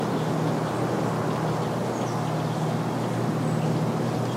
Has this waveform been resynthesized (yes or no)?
no